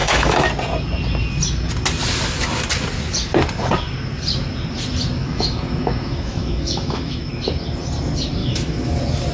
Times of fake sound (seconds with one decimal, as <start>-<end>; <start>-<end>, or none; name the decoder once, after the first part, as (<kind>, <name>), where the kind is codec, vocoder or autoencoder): 0.0-0.5 (autoencoder, DAC-VAE); 5.2-7.3; 8.4-8.9